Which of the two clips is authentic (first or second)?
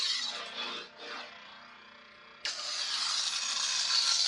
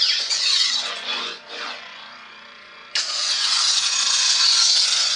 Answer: first